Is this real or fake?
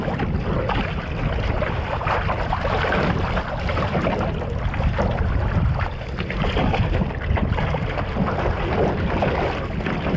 real